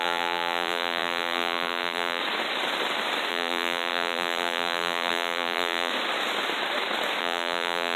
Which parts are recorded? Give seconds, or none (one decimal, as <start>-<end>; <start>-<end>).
2.2-3.3; 5.9-7.2